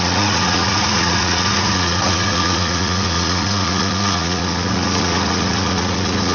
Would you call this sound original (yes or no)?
no